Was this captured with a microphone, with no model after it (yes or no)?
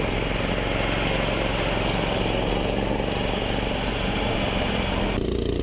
yes